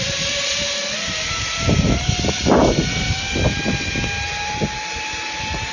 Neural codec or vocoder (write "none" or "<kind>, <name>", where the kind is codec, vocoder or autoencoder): none